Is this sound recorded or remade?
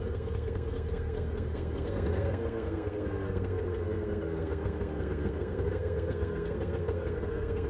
remade